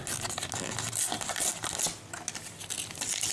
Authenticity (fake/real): real